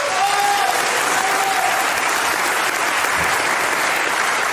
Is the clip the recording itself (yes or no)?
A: yes